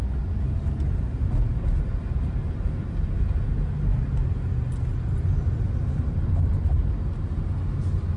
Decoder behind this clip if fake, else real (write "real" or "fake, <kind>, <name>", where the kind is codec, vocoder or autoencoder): real